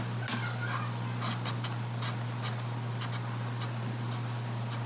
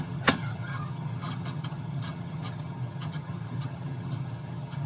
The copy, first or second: second